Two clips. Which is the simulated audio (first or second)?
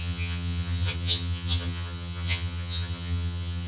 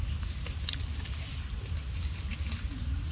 first